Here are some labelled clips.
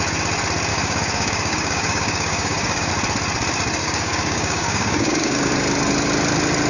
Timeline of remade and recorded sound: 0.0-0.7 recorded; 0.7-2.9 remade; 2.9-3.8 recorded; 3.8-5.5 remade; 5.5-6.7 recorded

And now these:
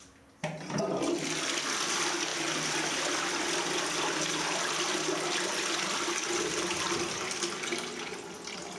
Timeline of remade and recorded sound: 0.0-8.8 recorded